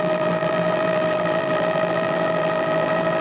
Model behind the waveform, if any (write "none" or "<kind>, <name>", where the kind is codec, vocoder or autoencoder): vocoder, BigVGAN v2